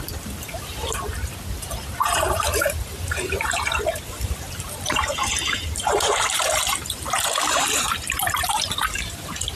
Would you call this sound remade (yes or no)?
yes